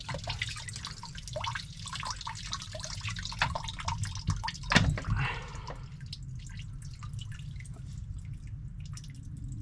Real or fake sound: real